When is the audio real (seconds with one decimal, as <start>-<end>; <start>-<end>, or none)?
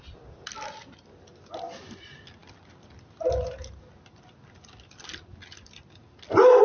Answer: 0.0-6.6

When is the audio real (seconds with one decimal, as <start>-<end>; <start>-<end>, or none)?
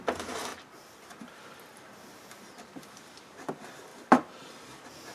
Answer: 0.0-0.5; 1.1-1.7; 3.5-3.9; 4.5-5.1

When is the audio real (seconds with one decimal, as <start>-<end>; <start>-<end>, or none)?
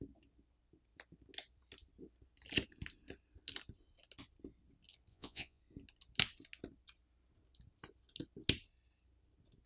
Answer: 0.0-5.1; 5.6-9.7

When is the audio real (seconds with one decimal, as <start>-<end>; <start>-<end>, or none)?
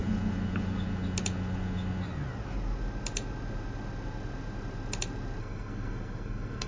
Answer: 0.0-5.4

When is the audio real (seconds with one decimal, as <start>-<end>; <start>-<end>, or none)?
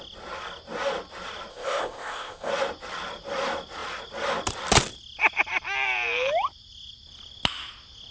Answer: 0.0-1.5; 2.5-8.1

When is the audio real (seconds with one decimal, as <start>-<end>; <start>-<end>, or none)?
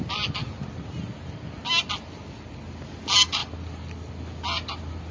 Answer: 0.0-5.1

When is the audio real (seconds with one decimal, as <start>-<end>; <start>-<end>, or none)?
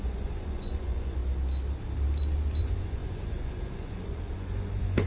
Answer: 1.2-2.6